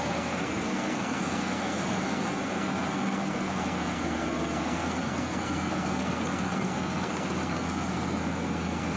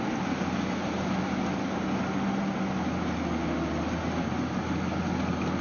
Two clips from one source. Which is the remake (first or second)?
first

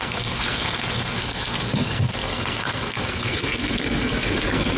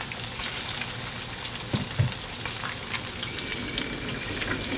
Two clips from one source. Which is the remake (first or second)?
first